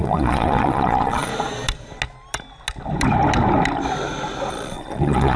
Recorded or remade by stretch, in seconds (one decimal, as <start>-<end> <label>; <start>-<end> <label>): 0.0-1.3 remade; 1.3-4.5 recorded; 4.5-5.4 remade

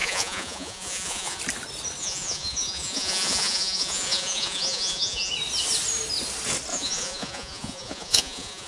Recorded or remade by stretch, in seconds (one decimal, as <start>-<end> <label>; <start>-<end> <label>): 0.0-1.4 remade; 1.4-2.0 recorded; 2.0-5.3 remade; 5.3-6.7 recorded; 6.7-8.7 remade

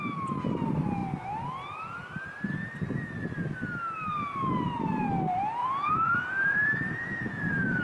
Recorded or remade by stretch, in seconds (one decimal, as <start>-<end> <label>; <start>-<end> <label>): 0.0-5.6 recorded; 5.6-7.8 remade

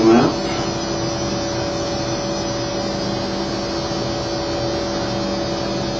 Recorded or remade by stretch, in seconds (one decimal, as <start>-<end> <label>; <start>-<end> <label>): 0.0-6.0 recorded